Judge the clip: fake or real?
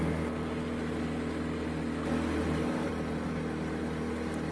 real